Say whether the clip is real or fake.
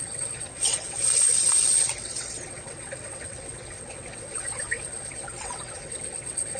fake